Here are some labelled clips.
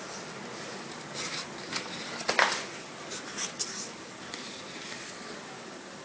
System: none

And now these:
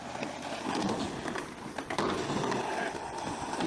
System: none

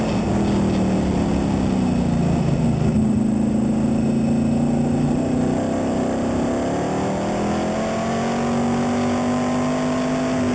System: none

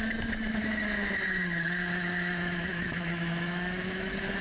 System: autoencoder, DAC-VAE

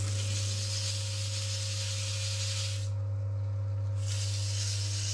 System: none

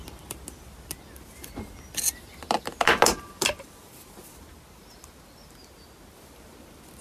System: none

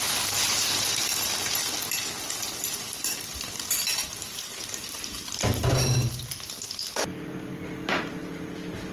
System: vocoder, BigVGAN v2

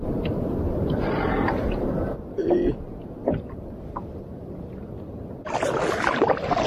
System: none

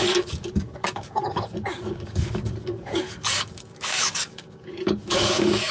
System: codec, DAC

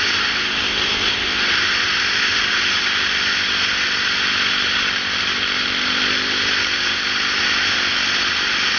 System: none